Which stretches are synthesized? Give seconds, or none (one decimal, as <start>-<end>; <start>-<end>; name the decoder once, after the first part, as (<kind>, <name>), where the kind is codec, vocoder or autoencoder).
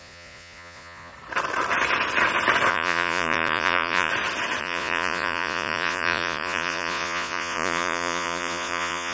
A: 0.0-1.1 (vocoder, Vocos); 2.7-4.1; 4.6-9.1